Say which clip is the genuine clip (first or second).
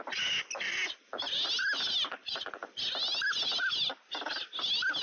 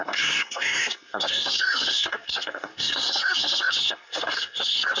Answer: first